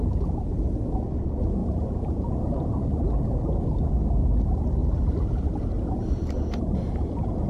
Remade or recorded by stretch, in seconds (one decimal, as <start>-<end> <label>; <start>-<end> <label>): 0.0-1.6 recorded; 1.6-2.3 remade; 2.3-4.8 recorded; 4.8-7.5 remade